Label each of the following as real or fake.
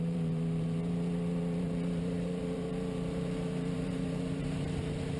fake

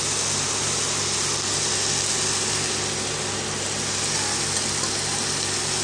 real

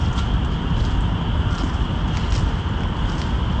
real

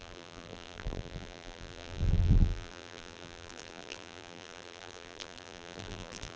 fake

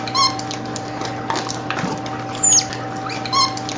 real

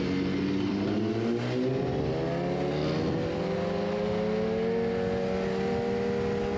real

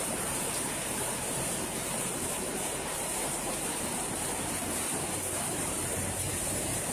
fake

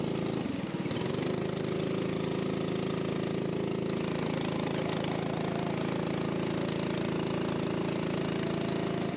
real